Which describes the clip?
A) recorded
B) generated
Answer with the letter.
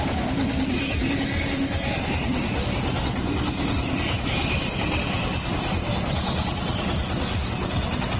A